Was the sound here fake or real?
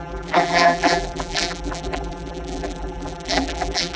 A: fake